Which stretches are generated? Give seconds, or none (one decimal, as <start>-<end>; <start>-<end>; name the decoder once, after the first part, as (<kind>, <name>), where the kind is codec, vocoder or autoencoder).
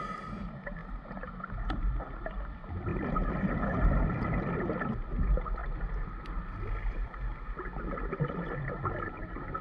0.8-1.5 (vocoder, BigVGAN v2)